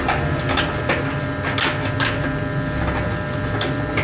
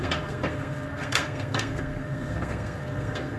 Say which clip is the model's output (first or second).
second